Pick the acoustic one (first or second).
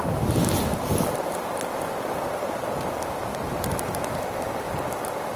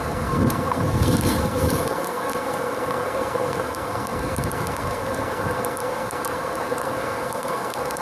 first